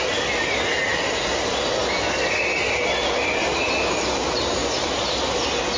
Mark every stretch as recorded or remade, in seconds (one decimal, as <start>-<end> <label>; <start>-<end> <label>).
0.0-5.8 recorded